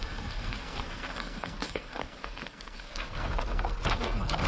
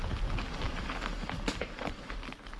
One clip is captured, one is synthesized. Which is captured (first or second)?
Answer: second